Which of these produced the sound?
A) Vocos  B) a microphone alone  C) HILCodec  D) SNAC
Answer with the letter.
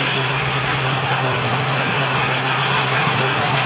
D